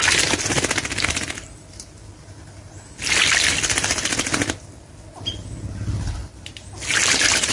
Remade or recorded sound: recorded